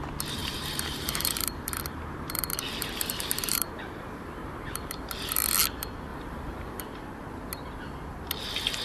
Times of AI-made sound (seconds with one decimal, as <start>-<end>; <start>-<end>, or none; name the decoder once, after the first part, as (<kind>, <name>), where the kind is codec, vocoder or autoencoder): 0.4-1.8 (vocoder, BigVGAN v2); 2.5-4.9; 6.1-6.8